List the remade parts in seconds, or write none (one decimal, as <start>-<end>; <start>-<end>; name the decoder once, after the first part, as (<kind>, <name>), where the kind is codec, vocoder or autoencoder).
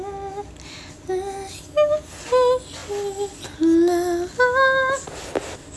none